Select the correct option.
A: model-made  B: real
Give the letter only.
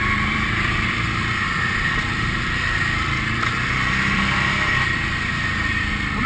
A